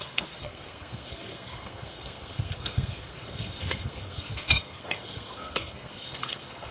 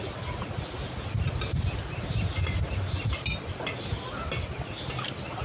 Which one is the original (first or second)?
second